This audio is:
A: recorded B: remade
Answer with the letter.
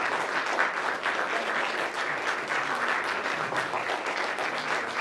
A